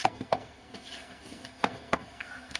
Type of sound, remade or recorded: remade